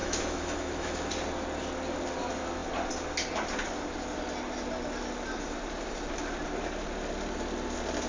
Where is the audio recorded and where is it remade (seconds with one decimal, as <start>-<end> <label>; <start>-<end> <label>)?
0.0-1.1 remade; 1.1-8.1 recorded